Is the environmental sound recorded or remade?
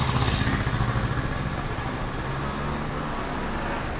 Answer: recorded